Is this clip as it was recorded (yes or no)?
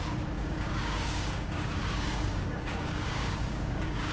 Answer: no